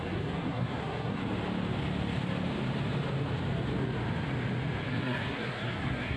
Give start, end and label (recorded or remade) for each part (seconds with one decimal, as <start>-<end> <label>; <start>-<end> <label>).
0.0-1.2 remade; 1.2-4.9 recorded; 4.9-6.2 remade